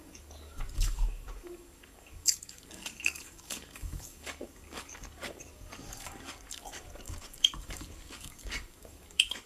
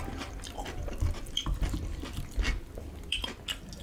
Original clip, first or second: second